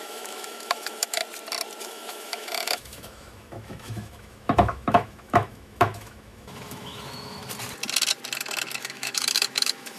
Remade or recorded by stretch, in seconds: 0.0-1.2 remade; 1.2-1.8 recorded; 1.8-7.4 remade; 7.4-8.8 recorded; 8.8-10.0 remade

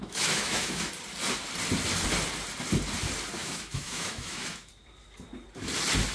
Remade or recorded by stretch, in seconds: 0.0-0.9 remade; 0.9-3.4 recorded; 3.4-4.7 remade; 4.7-6.1 recorded

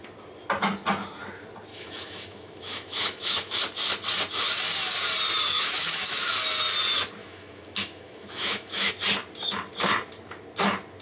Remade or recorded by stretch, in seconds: 0.0-1.7 recorded; 1.7-3.6 remade; 3.6-5.5 recorded; 5.5-6.3 remade; 6.3-7.2 recorded; 7.2-8.9 remade; 8.9-11.0 recorded

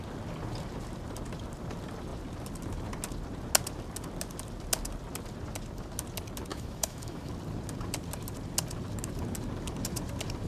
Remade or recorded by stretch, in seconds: 0.0-6.5 recorded; 6.5-7.3 remade; 7.3-10.5 recorded

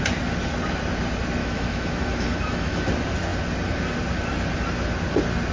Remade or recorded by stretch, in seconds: 0.0-1.4 recorded; 1.4-2.9 remade; 2.9-5.5 recorded

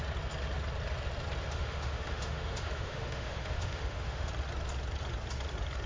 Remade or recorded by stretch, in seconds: 0.0-1.4 recorded; 1.4-4.3 remade; 4.3-5.9 recorded